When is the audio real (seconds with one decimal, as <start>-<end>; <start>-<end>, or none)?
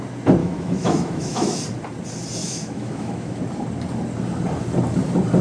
0.0-0.4; 1.6-2.4; 3.4-5.4